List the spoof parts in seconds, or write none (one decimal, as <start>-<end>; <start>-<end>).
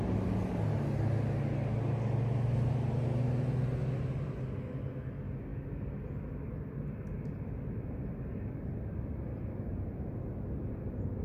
9.7-10.2